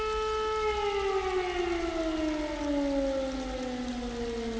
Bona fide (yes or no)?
yes